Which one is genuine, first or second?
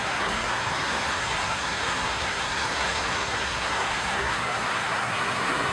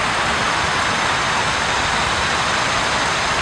second